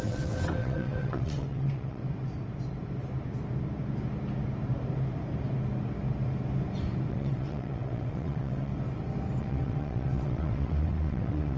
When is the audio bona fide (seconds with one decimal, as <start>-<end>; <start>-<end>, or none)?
2.0-7.1; 8.7-9.4